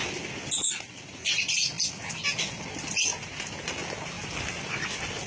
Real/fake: real